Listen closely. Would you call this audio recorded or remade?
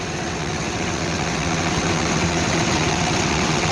remade